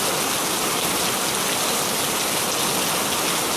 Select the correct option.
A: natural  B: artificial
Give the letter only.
A